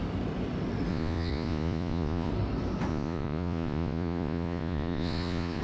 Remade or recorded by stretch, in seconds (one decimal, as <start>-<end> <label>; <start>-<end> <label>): 0.0-0.9 recorded; 0.9-2.3 remade; 2.3-2.9 recorded; 2.9-5.6 remade